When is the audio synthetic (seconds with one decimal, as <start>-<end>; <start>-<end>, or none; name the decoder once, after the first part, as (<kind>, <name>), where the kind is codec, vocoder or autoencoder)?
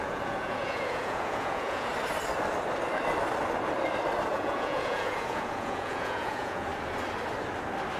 0.0-1.9 (vocoder, Vocos); 4.3-6.7